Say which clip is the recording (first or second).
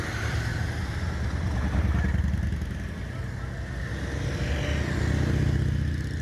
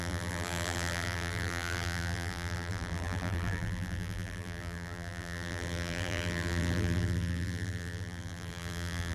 first